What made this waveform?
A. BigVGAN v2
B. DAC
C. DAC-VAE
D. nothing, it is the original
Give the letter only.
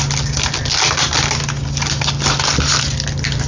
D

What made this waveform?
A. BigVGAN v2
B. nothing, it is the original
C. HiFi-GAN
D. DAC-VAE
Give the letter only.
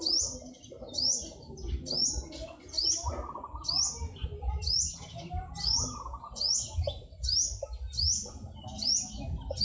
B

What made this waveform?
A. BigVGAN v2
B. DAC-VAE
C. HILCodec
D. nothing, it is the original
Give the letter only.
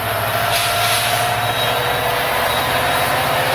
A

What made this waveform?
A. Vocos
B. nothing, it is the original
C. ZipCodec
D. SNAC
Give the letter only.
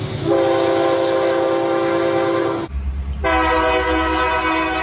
B